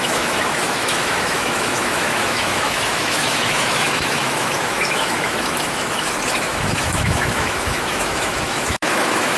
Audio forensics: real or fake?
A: fake